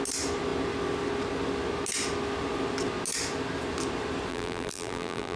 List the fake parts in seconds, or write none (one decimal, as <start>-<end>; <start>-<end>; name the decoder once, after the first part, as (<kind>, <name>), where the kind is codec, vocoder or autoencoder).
4.3-5.4 (vocoder, BigVGAN v2)